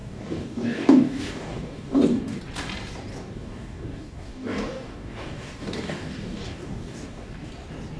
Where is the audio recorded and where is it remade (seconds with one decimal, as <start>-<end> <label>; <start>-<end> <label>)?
0.0-2.4 remade; 2.4-3.1 recorded; 3.1-7.5 remade; 7.5-8.0 recorded